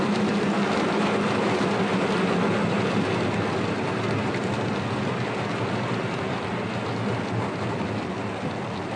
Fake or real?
real